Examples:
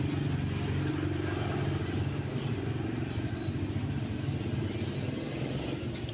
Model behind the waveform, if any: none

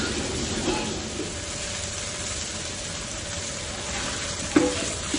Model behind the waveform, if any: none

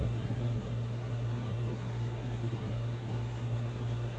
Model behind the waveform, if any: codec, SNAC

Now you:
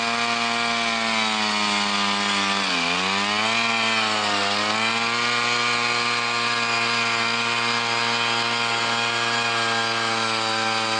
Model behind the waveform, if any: none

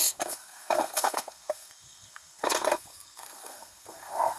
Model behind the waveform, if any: codec, SNAC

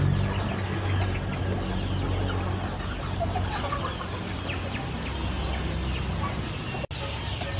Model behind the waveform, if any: none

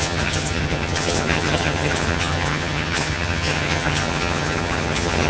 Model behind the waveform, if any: vocoder, HiFi-GAN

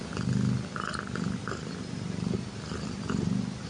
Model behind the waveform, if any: none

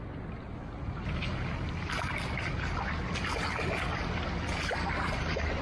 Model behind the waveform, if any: none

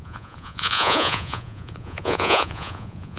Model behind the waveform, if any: vocoder, Vocos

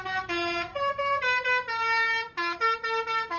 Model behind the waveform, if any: none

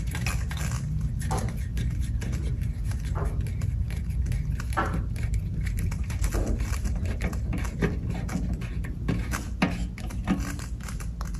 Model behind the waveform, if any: none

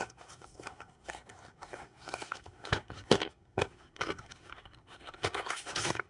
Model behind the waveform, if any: codec, SNAC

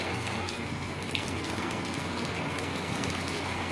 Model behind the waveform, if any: codec, SNAC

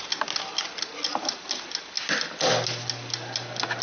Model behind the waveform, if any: none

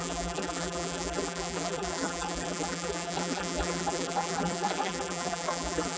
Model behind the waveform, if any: vocoder, BigVGAN v2